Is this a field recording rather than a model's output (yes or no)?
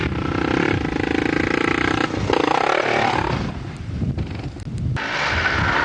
yes